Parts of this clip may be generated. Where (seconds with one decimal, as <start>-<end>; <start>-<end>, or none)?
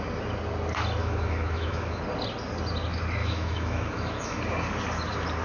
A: 1.0-2.0; 3.2-4.4